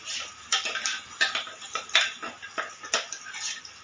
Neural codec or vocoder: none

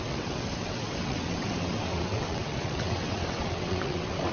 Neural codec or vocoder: vocoder, WaveNeXt